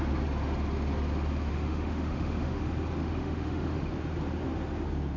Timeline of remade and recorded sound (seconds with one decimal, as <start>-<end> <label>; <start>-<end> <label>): 0.0-1.5 recorded; 1.5-2.6 remade; 2.6-3.0 recorded; 3.0-3.9 remade; 3.9-5.2 recorded